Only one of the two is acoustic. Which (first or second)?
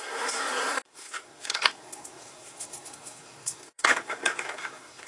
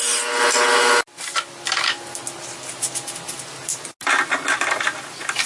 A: second